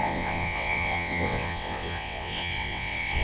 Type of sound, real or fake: fake